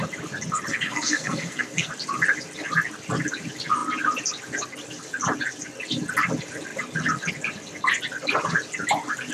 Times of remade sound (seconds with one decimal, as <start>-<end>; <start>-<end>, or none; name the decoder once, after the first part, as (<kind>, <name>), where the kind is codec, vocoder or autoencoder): 0.7-1.9 (codec, SNAC)